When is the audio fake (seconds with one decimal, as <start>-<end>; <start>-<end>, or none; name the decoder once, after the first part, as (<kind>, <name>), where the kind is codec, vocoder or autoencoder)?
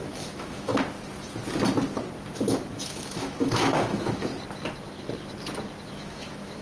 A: 0.0-0.7 (autoencoder, DAC-VAE); 2.3-4.3; 5.9-6.6